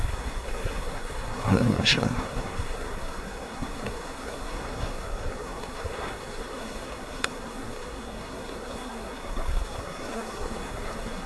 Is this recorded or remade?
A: remade